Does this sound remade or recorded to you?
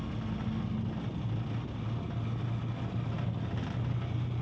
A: recorded